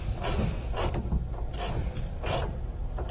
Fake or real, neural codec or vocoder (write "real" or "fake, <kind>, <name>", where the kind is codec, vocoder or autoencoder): fake, vocoder, BigVGAN v2